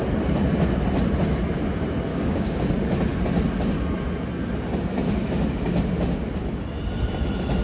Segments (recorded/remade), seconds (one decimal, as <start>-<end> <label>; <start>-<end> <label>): 0.0-2.1 recorded; 2.1-2.7 remade; 2.7-7.6 recorded

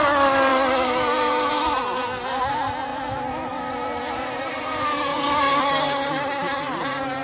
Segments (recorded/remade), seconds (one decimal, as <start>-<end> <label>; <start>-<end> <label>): 0.0-5.1 recorded; 5.1-5.6 remade; 5.6-7.2 recorded

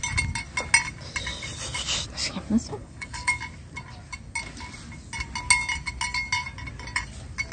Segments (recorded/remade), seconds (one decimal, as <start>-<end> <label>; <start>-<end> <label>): 0.0-2.8 recorded; 2.8-3.4 remade; 3.4-7.5 recorded